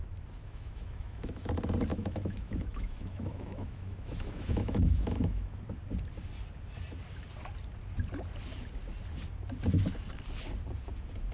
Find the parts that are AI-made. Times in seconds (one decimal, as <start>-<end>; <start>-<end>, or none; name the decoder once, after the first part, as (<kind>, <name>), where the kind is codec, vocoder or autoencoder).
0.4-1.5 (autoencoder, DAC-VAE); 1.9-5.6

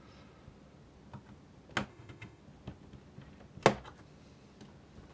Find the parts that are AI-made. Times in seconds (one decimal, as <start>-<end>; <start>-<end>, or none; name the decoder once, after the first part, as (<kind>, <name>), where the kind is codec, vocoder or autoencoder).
1.9-2.4 (autoencoder, DAC-VAE)

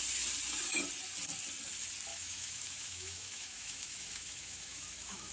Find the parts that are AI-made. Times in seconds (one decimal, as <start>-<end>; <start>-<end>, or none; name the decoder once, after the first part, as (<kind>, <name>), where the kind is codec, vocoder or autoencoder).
2.1-5.3 (autoencoder, DAC-VAE)

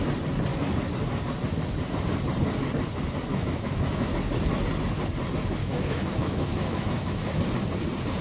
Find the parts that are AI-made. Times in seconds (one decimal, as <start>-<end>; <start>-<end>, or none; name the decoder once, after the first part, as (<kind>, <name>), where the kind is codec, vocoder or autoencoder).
3.3-4.1 (autoencoder, DAC-VAE); 5.6-7.4